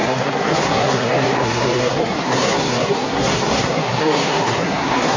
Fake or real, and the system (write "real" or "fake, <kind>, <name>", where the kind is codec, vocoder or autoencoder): fake, codec, SNAC